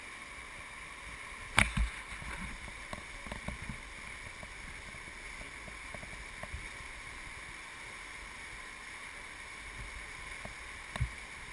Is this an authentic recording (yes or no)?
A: yes